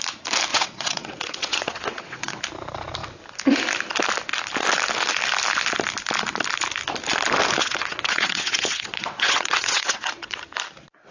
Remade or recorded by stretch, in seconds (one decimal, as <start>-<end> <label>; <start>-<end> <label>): 0.0-0.5 recorded; 0.5-2.4 remade; 2.4-7.6 recorded; 7.6-10.4 remade; 10.4-11.1 recorded